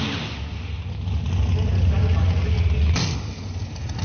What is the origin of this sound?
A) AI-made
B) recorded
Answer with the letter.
B